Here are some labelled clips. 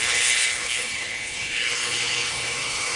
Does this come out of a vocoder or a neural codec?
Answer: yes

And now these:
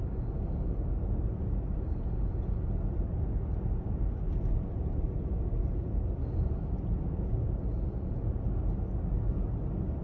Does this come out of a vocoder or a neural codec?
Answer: no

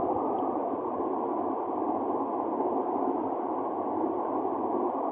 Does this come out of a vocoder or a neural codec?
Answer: no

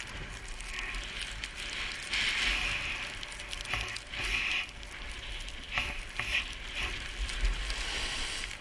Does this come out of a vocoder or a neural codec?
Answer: no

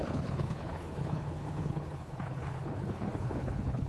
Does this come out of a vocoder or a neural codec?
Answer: yes